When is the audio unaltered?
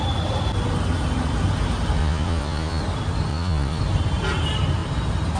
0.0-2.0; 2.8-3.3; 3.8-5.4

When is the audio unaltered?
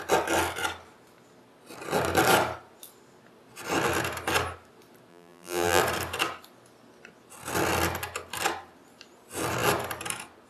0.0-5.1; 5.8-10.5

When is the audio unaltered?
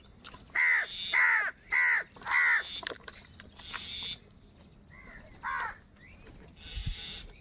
0.0-7.4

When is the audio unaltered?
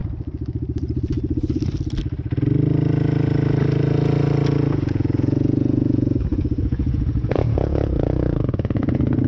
0.0-4.9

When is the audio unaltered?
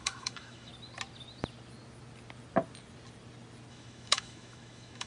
0.7-3.7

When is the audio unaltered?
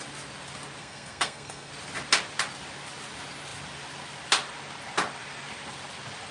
0.0-0.8; 1.7-6.3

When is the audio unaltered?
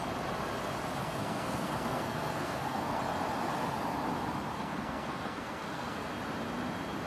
0.0-1.0; 3.0-4.5; 6.1-7.1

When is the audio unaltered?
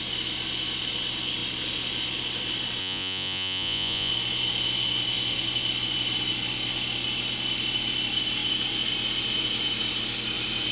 0.0-2.8; 4.1-10.7